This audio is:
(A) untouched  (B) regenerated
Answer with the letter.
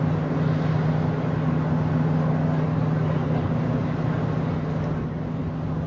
A